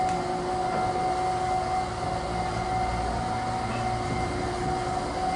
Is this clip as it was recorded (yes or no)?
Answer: yes